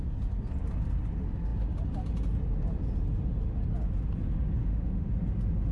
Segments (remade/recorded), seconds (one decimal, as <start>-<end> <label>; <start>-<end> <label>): 0.0-4.6 recorded; 4.6-5.1 remade; 5.1-5.7 recorded